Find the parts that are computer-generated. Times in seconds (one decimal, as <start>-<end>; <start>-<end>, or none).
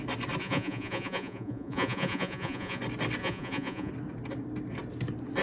0.4-2.8; 3.2-3.9